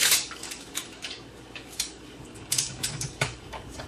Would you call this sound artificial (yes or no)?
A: yes